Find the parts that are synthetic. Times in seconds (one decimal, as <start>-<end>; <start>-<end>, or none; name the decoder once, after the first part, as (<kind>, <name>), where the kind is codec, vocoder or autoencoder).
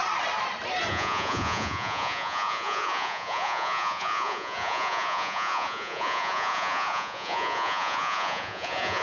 0.9-9.0 (vocoder, Vocos)